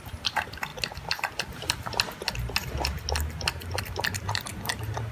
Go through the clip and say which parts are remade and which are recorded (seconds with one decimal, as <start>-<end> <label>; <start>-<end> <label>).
0.0-0.7 remade; 0.7-3.8 recorded; 3.8-5.1 remade